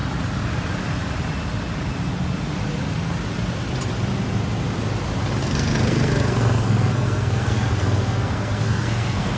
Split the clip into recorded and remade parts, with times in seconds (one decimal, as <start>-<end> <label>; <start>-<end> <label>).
0.0-5.4 recorded; 5.4-9.4 remade

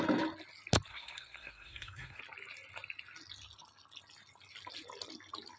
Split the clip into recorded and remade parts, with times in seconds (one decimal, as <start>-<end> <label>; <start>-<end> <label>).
0.0-0.9 recorded; 0.9-2.2 remade; 2.2-5.6 recorded

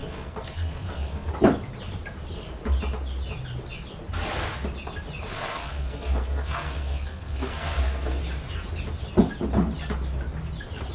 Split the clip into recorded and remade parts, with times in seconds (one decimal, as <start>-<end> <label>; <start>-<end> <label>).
0.0-1.3 remade; 1.3-5.3 recorded; 5.3-8.2 remade; 8.2-10.9 recorded

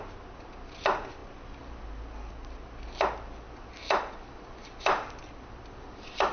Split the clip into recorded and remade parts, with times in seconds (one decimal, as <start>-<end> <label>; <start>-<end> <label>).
0.0-6.3 recorded

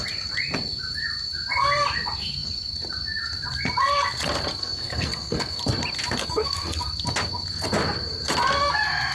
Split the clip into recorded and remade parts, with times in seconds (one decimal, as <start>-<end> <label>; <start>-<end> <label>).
0.0-4.6 recorded; 4.6-5.6 remade; 5.6-6.2 recorded; 6.2-6.8 remade; 6.8-9.1 recorded

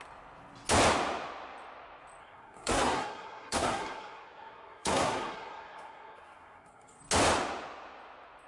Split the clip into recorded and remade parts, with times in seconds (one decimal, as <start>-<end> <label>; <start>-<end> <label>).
0.0-2.2 recorded; 2.2-7.0 remade; 7.0-8.5 recorded

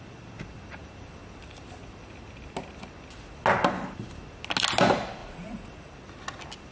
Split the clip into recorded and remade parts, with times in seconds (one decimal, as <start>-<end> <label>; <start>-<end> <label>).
0.0-5.2 recorded; 5.2-5.9 remade; 5.9-6.7 recorded

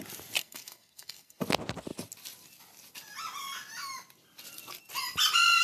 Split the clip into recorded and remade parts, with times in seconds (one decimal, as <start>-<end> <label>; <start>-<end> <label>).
0.0-0.4 recorded; 0.4-1.4 remade; 1.4-5.6 recorded